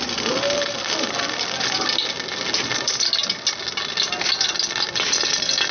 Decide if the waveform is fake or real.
real